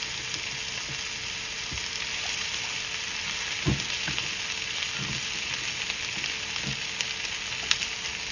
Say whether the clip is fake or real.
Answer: real